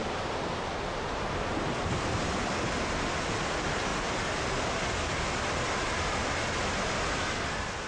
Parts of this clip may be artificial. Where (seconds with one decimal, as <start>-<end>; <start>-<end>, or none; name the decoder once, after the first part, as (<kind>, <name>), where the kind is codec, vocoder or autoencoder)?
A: none